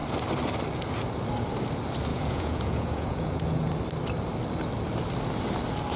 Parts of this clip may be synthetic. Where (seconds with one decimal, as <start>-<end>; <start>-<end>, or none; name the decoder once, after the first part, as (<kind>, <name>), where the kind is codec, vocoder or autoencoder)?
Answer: 2.1-3.7 (vocoder, Vocos)